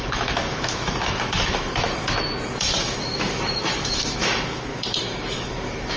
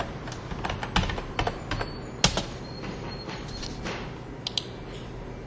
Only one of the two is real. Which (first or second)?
second